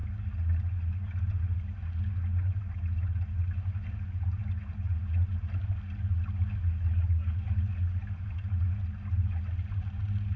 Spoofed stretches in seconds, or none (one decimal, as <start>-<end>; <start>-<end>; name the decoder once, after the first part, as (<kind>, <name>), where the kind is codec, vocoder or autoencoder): none